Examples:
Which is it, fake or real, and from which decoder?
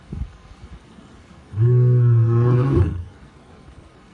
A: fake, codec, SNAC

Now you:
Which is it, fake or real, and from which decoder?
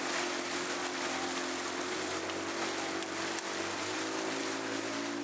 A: real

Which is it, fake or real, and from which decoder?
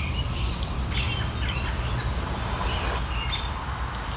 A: real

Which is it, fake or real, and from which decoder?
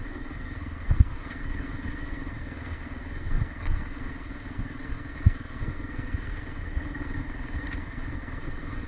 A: fake, codec, SNAC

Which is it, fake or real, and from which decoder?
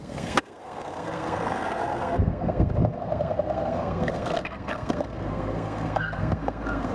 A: fake, codec, SNAC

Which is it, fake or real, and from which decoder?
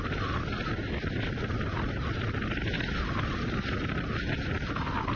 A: real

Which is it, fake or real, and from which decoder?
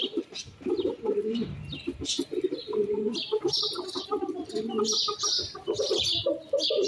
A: real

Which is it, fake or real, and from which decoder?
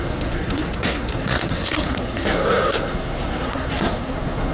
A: fake, codec, SNAC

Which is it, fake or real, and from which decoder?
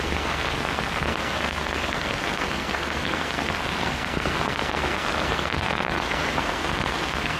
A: fake, codec, SNAC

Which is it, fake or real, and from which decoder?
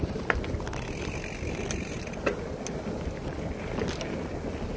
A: real